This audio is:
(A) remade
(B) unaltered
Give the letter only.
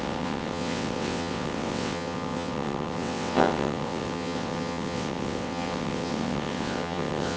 A